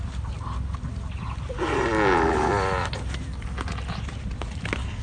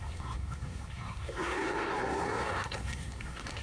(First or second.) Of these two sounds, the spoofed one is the second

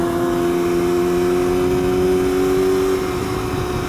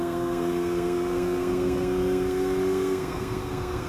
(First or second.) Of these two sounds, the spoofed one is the second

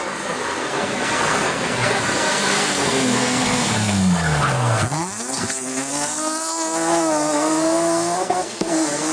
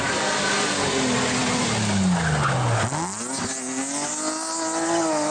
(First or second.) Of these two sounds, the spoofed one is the first